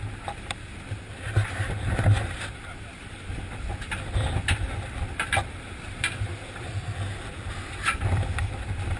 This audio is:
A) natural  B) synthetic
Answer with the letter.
A